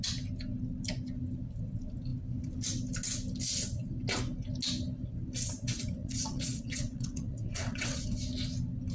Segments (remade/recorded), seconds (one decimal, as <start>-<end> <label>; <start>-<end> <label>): 0.0-6.0 recorded; 6.0-8.0 remade; 8.0-8.9 recorded